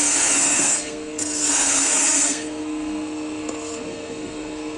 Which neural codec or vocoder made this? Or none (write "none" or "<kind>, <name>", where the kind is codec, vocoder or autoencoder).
codec, SNAC